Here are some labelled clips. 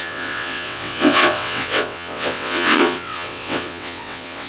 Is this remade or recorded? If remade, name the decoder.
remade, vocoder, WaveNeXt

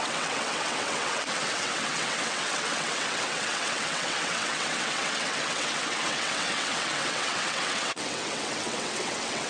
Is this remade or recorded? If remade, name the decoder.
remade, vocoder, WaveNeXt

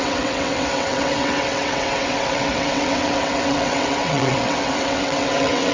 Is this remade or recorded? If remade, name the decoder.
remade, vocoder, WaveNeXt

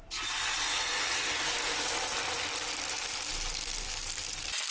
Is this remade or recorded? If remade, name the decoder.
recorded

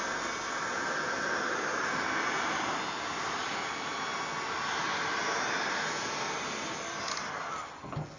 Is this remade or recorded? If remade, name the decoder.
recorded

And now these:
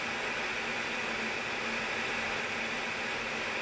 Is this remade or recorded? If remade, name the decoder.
recorded